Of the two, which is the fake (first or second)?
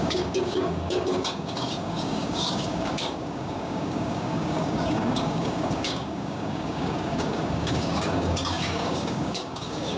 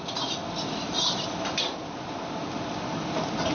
first